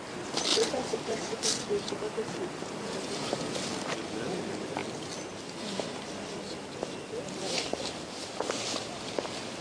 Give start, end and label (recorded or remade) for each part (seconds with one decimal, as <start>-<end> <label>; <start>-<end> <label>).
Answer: 0.0-0.5 recorded; 0.5-1.5 remade; 1.5-9.6 recorded